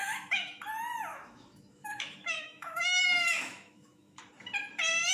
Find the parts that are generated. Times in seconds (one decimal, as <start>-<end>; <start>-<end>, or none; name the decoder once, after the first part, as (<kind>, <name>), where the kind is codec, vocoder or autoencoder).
0.0-0.6 (autoencoder, DAC-VAE); 1.1-4.2